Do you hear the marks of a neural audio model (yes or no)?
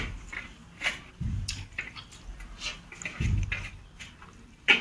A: no